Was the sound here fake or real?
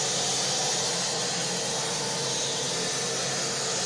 real